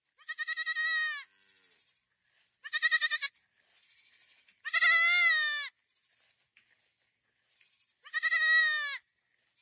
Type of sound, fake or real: real